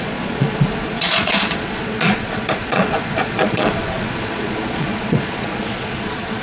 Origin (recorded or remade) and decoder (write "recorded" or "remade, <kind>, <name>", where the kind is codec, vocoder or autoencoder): remade, vocoder, Vocos